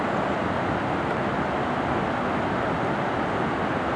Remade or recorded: recorded